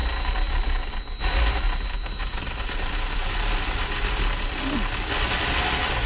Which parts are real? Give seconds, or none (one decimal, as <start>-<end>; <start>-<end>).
0.0-2.2; 4.5-6.1

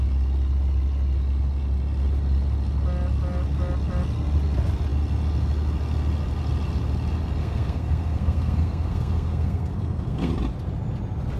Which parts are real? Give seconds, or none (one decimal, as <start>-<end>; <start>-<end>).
0.0-7.4; 10.3-11.4

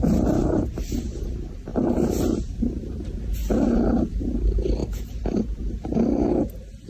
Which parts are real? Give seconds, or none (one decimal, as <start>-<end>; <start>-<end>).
0.0-1.7; 4.2-4.8; 5.7-6.9

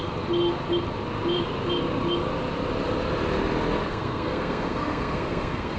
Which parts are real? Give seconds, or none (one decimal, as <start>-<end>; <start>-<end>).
0.0-3.9

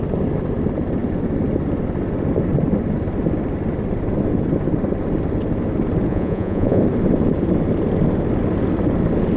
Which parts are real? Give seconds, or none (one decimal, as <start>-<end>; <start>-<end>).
0.0-6.1; 6.8-9.4